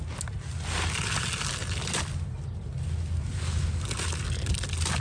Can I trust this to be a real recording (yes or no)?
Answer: yes